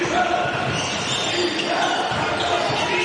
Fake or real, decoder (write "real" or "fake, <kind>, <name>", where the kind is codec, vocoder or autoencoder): real